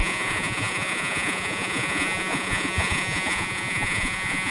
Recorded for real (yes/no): no